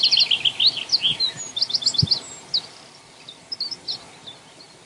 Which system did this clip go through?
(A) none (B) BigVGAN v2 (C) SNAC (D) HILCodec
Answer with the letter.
A